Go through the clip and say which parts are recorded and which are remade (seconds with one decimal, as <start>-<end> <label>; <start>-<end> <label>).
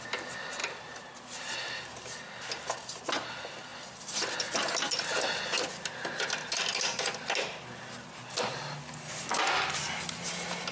0.0-0.6 recorded; 0.6-1.6 remade; 1.6-10.7 recorded